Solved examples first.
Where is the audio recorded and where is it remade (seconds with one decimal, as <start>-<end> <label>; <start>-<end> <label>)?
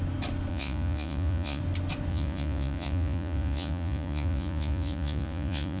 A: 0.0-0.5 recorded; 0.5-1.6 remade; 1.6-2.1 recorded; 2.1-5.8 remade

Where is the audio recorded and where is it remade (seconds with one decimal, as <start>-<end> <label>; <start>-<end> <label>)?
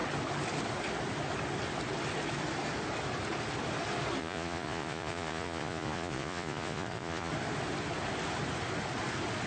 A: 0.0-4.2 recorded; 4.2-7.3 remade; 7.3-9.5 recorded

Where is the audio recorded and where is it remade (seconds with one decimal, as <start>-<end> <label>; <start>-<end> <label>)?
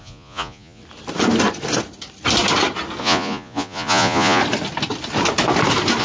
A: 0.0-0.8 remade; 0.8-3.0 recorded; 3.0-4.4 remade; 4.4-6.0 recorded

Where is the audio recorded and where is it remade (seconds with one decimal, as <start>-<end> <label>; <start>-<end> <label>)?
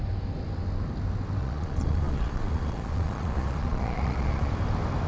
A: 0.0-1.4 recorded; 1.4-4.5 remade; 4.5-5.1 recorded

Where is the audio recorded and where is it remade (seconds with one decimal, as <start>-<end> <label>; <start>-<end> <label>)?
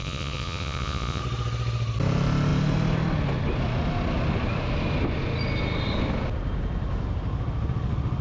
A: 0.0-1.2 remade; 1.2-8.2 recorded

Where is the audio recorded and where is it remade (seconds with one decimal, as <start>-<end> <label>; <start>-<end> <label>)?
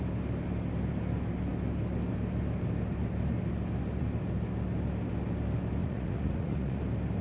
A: 0.0-5.8 recorded; 5.8-6.8 remade; 6.8-7.2 recorded